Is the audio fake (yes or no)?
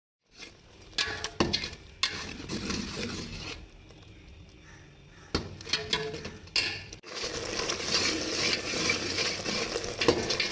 no